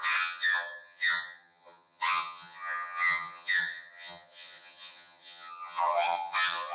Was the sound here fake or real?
fake